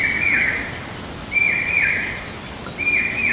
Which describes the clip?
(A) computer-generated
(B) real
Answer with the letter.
B